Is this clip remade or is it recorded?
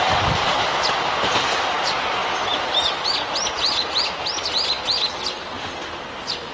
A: recorded